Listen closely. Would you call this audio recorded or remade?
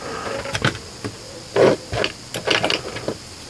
recorded